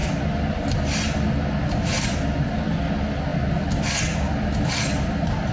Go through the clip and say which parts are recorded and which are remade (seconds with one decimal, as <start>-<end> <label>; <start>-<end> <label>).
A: 0.0-5.5 recorded